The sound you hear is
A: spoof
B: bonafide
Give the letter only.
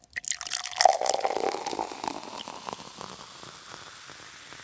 B